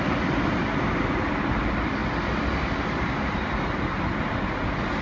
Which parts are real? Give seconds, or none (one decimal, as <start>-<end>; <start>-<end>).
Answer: 0.0-5.0